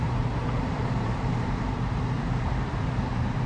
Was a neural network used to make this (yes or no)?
yes